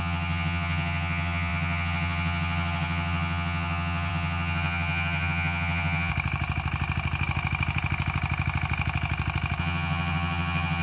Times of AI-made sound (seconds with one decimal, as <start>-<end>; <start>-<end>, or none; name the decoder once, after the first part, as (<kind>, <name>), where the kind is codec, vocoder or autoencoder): 0.0-6.1 (vocoder, HiFi-GAN); 9.6-10.8